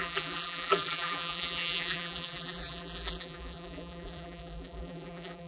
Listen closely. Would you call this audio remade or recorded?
remade